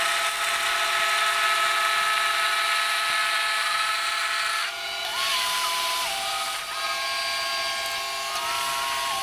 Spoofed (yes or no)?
no